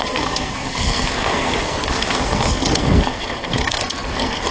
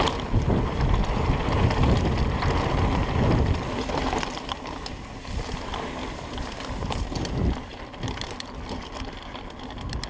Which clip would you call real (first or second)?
second